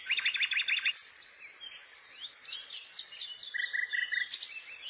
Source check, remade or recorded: recorded